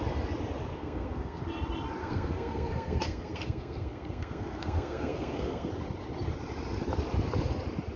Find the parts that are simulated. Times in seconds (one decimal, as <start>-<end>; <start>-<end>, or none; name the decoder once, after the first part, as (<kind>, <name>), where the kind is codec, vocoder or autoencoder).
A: 0.7-1.4 (codec, SNAC); 2.0-5.7